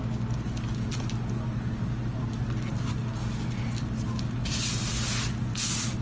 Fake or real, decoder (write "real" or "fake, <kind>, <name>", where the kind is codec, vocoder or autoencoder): real